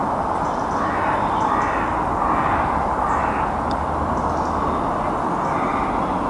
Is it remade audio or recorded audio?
recorded